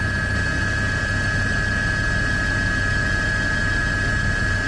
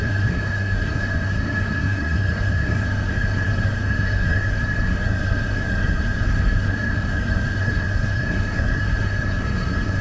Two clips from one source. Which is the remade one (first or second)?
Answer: second